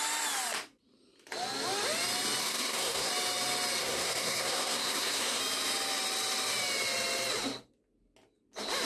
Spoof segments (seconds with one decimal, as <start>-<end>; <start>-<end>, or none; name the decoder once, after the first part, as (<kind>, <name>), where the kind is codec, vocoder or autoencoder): 2.4-3.1 (codec, SNAC); 3.8-5.4